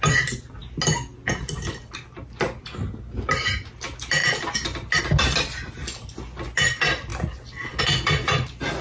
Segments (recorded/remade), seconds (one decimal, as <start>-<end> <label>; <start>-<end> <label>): 0.0-8.8 recorded